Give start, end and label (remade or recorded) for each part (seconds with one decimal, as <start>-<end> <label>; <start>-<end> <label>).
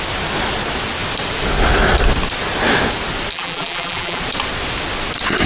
0.0-3.3 recorded; 3.3-4.2 remade; 4.2-5.5 recorded